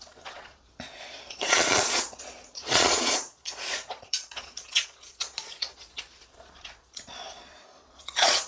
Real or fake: fake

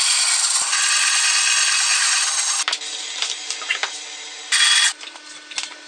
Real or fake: real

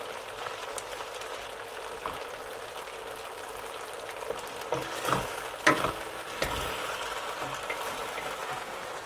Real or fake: real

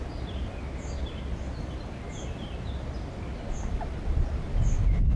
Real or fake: real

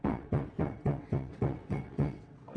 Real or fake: fake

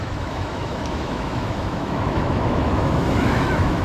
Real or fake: fake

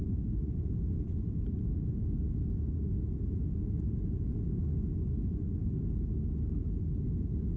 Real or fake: real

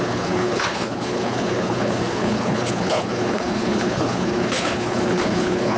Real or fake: fake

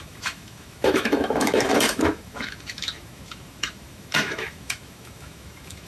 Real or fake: fake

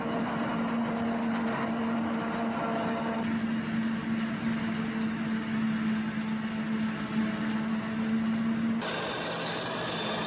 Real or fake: real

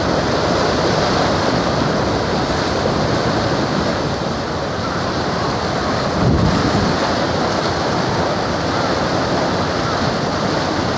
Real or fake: real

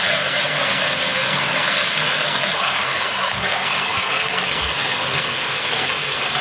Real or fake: fake